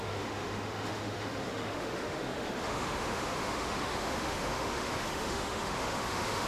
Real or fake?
fake